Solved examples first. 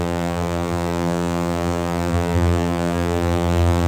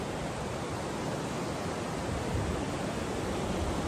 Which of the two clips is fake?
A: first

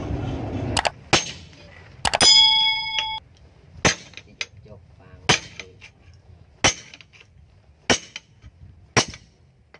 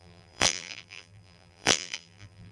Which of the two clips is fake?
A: second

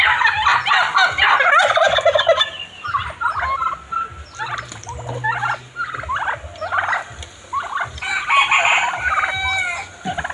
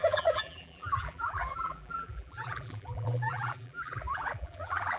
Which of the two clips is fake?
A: second